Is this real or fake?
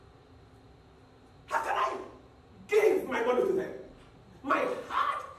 real